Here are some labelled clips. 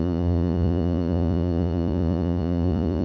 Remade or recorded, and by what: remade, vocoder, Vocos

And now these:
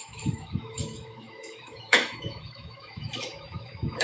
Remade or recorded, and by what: remade, autoencoder, DAC-VAE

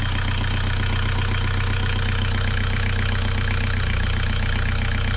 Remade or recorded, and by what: recorded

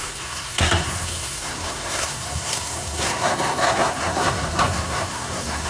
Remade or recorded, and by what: remade, codec, SNAC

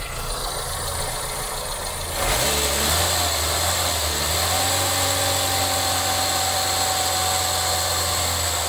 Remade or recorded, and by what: recorded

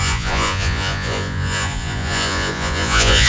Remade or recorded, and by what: remade, vocoder, Vocos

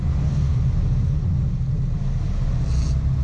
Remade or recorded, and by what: recorded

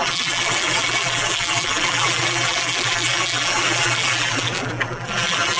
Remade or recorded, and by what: remade, vocoder, BigVGAN v2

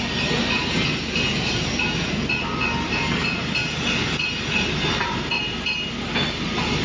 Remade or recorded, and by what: recorded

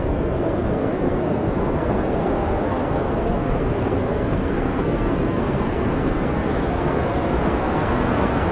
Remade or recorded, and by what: remade, codec, SNAC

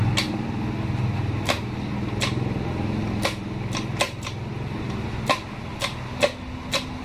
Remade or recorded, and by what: recorded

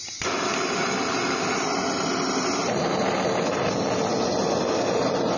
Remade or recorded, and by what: recorded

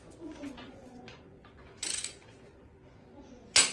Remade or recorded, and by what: remade, vocoder, Vocos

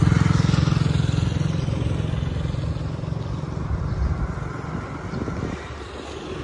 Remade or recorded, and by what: recorded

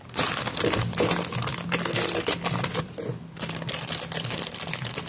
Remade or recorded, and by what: recorded